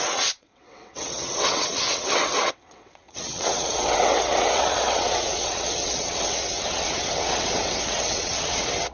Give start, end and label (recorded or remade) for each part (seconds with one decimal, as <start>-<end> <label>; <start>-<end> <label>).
0.0-8.9 remade